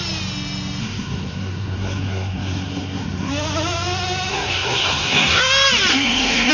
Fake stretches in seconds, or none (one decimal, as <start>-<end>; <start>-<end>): 0.8-3.3; 4.3-5.4; 5.9-6.5